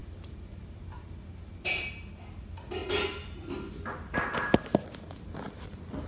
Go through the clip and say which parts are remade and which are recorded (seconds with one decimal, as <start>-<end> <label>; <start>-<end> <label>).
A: 0.0-1.9 remade; 1.9-6.1 recorded